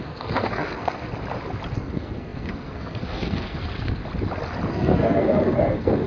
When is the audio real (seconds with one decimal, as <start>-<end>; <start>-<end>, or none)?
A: 1.1-1.7; 4.0-4.7